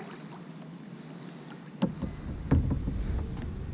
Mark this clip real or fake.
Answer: real